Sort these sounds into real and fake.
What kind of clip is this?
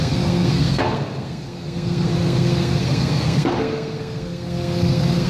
fake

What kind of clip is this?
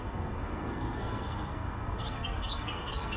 fake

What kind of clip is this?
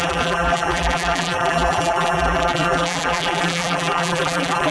fake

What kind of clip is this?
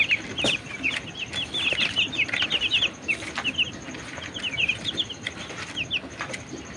real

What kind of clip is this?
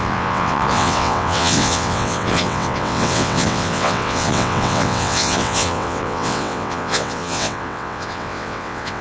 fake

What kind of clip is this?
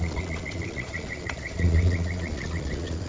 fake